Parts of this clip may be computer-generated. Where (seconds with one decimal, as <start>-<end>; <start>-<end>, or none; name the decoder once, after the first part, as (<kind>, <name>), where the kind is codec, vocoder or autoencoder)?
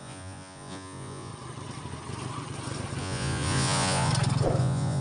0.0-1.3 (vocoder, Vocos); 3.0-4.1; 4.6-5.0